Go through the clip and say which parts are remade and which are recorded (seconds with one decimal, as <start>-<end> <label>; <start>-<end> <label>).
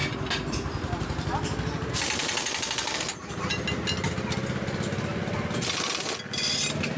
0.0-7.0 recorded